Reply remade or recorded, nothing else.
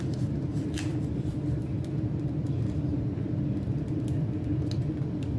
remade